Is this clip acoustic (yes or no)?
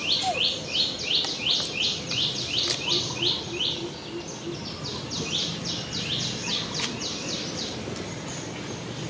yes